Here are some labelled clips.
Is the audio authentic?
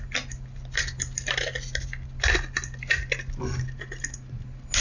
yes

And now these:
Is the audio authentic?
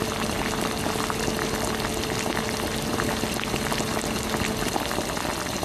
yes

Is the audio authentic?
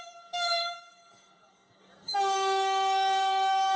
no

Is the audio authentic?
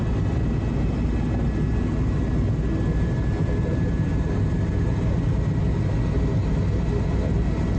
yes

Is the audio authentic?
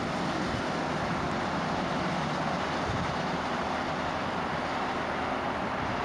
yes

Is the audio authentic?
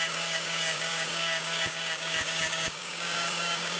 no